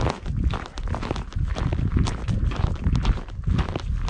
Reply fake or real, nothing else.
real